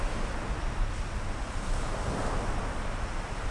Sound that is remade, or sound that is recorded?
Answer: recorded